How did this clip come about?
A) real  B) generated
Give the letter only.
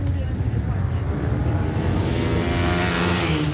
A